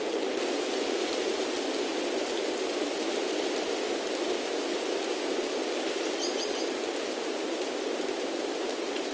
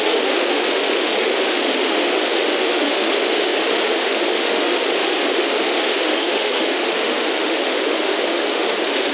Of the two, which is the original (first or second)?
first